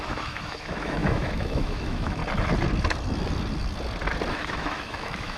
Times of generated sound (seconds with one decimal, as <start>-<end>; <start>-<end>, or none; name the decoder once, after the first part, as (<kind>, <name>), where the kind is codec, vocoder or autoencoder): 0.0-2.2 (autoencoder, DAC-VAE); 4.3-5.4